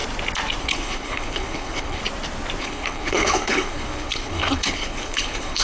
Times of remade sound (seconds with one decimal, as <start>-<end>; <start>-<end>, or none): 0.6-2.0; 2.6-5.6